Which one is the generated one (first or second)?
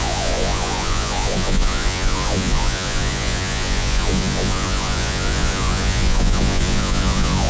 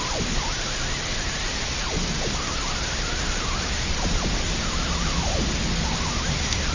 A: first